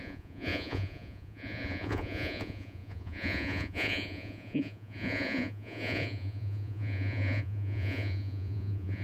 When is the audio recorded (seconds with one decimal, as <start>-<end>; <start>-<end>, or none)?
none